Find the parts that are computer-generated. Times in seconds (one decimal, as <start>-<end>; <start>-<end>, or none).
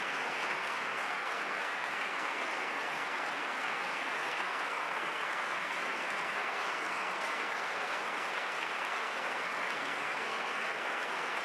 0.0-11.4